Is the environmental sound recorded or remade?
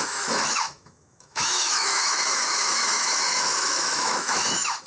remade